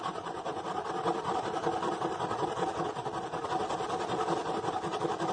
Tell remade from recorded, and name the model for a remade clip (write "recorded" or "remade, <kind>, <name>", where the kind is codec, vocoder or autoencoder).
recorded